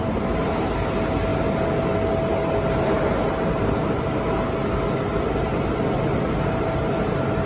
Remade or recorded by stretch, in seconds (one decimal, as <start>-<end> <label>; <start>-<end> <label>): 0.0-7.5 recorded